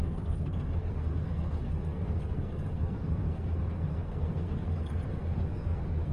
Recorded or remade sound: remade